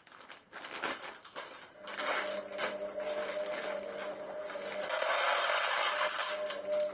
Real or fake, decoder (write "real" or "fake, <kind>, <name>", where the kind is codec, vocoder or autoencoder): real